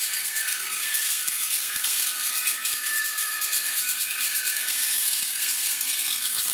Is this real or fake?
fake